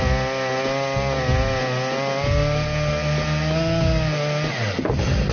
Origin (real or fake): real